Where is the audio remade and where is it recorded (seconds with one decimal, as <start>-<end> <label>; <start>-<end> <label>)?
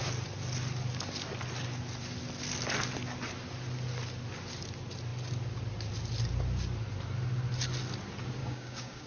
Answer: 0.0-8.4 recorded; 8.4-9.1 remade